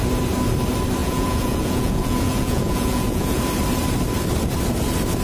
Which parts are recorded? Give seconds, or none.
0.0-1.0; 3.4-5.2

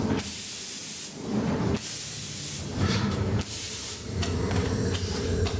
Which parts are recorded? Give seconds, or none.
0.0-2.7

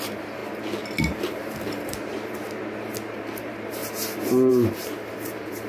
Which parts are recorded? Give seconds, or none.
0.4-1.2; 2.1-3.4; 3.8-4.5